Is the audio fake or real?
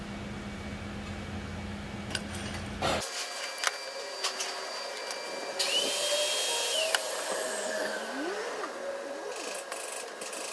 real